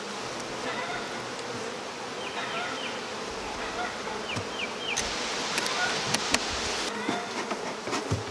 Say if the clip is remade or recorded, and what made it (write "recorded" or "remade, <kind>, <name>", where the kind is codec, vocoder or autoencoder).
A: recorded